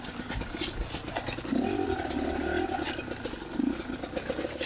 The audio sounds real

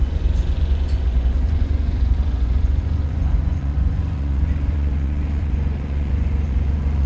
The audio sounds fake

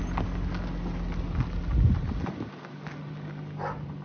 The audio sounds real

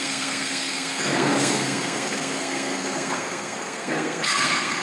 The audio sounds fake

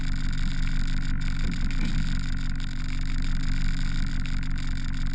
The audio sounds real